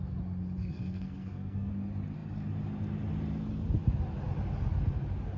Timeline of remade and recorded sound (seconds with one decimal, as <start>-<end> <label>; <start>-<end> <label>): 0.0-0.6 recorded; 0.6-1.7 remade; 1.7-5.4 recorded